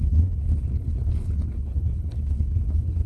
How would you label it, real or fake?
fake